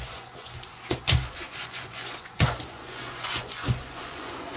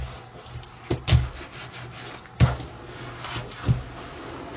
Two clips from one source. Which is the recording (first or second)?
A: second